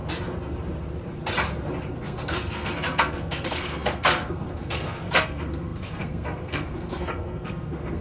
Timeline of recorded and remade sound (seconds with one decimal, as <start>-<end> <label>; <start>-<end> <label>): 0.0-1.9 recorded; 1.9-8.0 remade